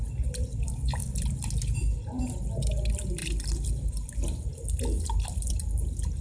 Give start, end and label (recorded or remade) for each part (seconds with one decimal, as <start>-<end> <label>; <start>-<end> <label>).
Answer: 0.0-6.2 recorded